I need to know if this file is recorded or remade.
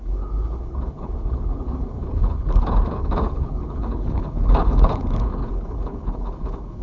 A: remade